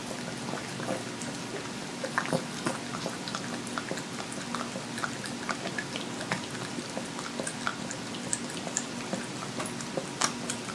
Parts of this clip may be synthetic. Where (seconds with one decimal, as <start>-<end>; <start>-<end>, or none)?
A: none